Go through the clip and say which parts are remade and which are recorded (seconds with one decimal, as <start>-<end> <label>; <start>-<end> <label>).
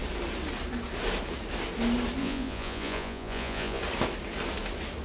0.0-2.2 recorded; 2.2-3.8 remade; 3.8-5.0 recorded